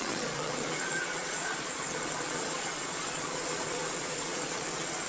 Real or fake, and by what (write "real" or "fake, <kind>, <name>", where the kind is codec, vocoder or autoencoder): fake, vocoder, Vocos